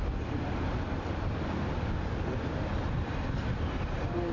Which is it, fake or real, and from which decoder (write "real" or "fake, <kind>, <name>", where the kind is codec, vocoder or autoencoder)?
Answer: real